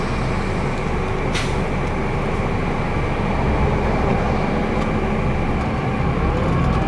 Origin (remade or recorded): recorded